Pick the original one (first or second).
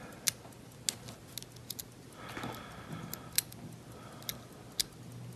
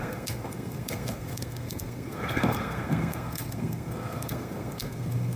first